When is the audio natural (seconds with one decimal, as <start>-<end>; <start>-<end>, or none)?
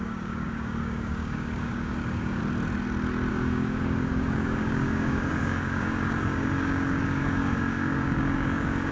2.4-3.3